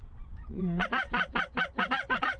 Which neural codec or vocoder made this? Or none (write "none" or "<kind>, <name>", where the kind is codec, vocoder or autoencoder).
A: vocoder, Vocos